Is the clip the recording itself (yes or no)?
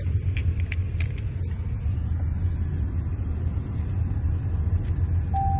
yes